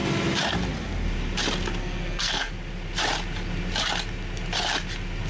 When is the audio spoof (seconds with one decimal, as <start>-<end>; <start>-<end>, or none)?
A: 1.8-2.5